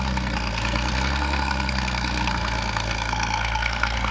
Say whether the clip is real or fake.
fake